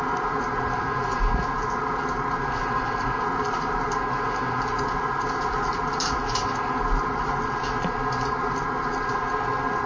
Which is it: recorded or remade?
recorded